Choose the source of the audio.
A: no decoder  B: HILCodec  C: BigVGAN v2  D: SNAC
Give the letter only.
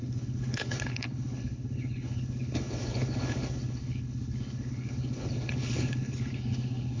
B